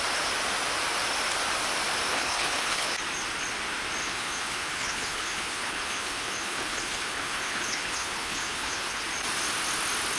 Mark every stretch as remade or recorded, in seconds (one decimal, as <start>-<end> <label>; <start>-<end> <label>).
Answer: 0.0-2.1 recorded; 2.1-3.0 remade; 3.0-4.0 recorded; 4.0-9.0 remade; 9.0-10.2 recorded